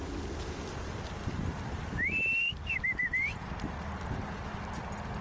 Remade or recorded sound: remade